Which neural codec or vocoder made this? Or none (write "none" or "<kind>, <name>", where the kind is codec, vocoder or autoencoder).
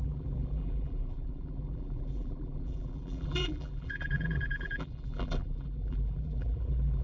vocoder, BigVGAN v2